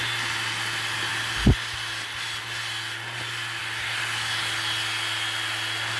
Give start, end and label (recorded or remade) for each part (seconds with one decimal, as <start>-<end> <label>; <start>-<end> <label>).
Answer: 0.0-6.0 recorded